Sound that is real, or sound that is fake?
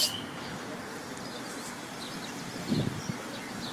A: real